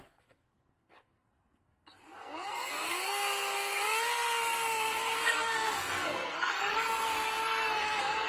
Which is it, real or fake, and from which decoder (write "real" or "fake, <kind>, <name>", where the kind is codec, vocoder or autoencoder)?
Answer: fake, codec, SNAC